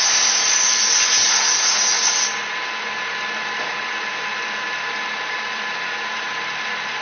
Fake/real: real